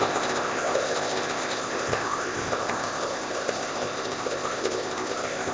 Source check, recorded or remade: remade